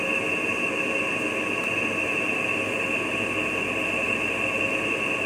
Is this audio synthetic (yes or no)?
no